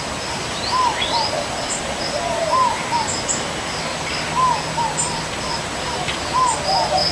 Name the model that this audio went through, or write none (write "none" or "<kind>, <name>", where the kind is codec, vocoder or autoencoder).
none